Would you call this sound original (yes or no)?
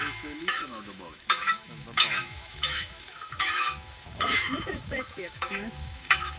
no